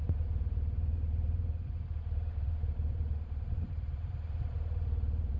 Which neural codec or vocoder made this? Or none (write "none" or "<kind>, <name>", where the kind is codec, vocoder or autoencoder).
vocoder, BigVGAN v2